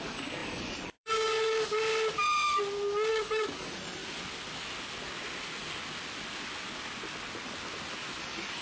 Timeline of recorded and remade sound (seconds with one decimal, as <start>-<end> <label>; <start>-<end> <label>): 0.0-1.9 remade; 1.9-3.1 recorded; 3.1-4.0 remade; 4.0-8.2 recorded; 8.2-8.6 remade